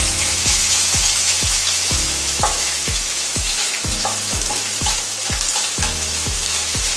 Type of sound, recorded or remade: remade